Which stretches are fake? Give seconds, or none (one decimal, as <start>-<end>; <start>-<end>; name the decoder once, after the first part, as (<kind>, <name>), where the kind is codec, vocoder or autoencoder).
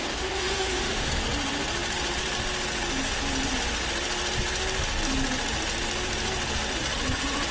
0.0-1.1 (autoencoder, DAC-VAE)